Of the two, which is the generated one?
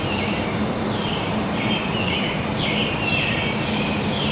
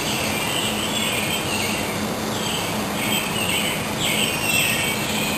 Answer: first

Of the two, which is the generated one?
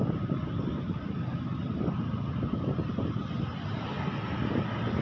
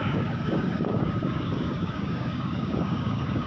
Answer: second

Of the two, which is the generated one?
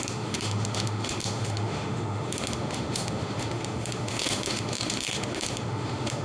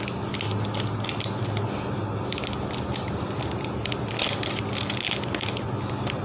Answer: first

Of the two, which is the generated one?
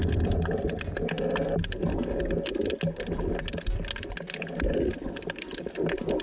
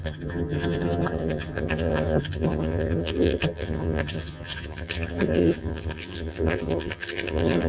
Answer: second